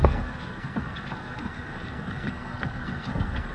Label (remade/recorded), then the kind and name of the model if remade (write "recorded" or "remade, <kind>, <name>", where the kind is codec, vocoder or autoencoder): remade, codec, SNAC